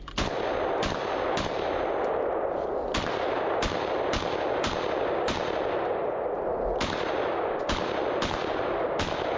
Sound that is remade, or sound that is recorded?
recorded